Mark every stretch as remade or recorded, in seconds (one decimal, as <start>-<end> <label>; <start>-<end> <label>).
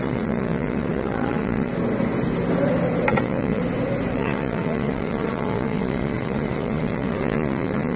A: 0.0-1.7 remade; 1.7-3.1 recorded; 3.1-3.6 remade; 3.6-4.1 recorded; 4.1-8.0 remade